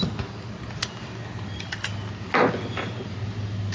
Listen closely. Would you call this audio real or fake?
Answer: real